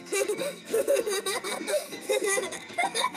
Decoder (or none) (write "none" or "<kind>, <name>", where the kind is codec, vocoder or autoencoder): codec, SNAC